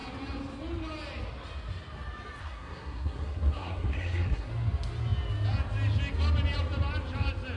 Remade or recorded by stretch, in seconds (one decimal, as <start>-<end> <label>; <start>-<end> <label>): 0.0-2.4 recorded; 2.4-4.5 remade; 4.5-7.6 recorded